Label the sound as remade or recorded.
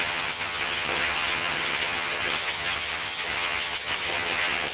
remade